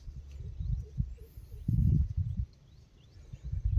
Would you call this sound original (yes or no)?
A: yes